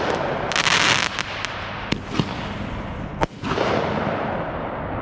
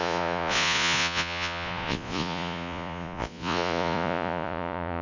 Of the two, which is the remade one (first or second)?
second